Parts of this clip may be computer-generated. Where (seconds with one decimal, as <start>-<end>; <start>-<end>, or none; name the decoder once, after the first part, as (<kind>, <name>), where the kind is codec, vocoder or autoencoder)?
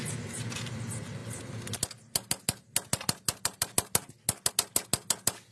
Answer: none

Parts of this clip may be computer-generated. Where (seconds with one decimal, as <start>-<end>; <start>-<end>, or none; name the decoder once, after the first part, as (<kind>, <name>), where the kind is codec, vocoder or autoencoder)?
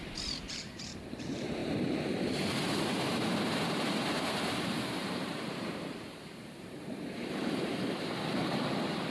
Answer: 0.0-9.1 (vocoder, BigVGAN v2)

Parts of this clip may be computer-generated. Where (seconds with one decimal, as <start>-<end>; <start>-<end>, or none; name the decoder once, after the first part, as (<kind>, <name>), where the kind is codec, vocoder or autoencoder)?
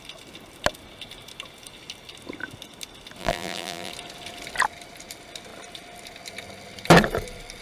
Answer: 3.2-3.9 (vocoder, BigVGAN v2)